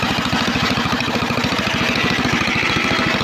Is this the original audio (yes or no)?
yes